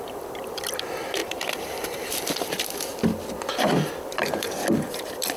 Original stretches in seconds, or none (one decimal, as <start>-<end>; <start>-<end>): none